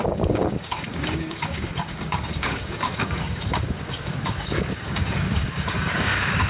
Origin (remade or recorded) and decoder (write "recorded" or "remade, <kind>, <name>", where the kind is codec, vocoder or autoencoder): remade, codec, DAC